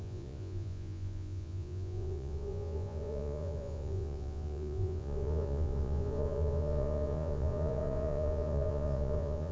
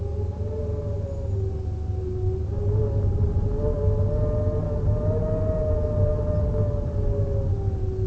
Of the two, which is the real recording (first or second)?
second